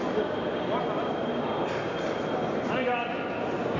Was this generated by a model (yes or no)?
no